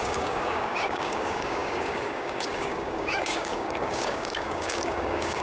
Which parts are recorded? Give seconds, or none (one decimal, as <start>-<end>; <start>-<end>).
none